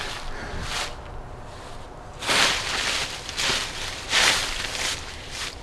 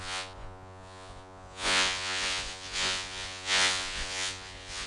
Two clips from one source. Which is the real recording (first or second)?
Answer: first